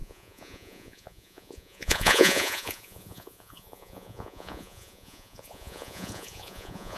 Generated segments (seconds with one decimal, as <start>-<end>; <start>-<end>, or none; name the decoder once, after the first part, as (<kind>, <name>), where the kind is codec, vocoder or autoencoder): 0.0-7.0 (vocoder, Vocos)